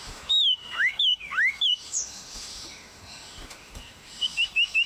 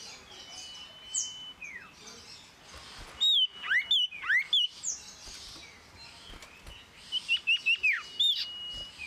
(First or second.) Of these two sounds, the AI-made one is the first